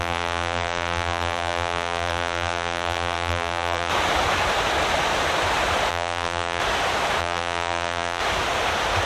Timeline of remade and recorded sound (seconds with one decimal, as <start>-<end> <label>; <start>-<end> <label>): 0.0-3.9 remade; 3.9-5.9 recorded; 5.9-6.6 remade; 6.6-7.2 recorded; 7.2-8.2 remade; 8.2-9.1 recorded